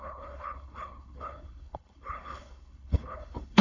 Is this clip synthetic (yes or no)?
yes